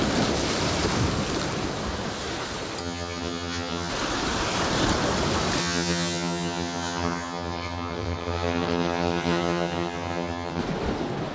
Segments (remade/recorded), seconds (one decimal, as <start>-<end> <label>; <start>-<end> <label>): 0.0-2.8 recorded; 2.8-3.9 remade; 3.9-5.6 recorded; 5.6-10.6 remade; 10.6-11.3 recorded

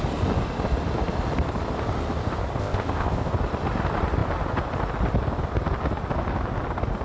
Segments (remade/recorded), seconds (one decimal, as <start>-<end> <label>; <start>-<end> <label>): 0.0-2.6 recorded; 2.6-3.3 remade; 3.3-7.0 recorded

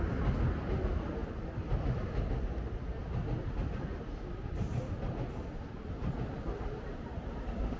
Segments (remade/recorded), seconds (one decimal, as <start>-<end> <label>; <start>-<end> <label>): 0.0-7.8 recorded

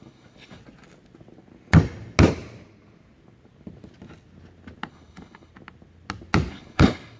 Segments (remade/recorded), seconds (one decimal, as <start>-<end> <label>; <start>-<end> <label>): 0.0-0.6 remade; 0.6-4.9 recorded; 4.9-5.5 remade; 5.5-6.5 recorded; 6.5-7.2 remade

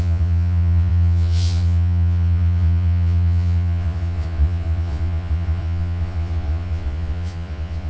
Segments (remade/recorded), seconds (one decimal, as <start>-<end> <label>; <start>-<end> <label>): 0.0-7.9 remade

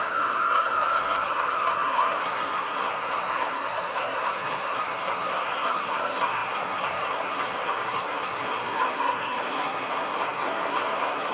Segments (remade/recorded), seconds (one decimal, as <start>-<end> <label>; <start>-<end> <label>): 0.0-11.3 remade